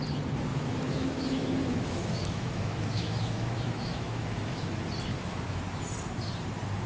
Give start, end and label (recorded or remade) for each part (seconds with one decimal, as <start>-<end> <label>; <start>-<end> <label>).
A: 0.0-0.5 recorded; 0.5-4.6 remade; 4.6-5.1 recorded; 5.1-5.6 remade; 5.6-6.9 recorded